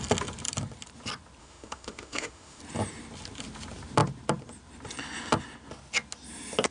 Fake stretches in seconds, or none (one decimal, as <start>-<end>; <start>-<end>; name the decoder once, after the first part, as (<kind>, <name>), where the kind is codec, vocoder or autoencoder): 1.4-2.6 (autoencoder, DAC-VAE)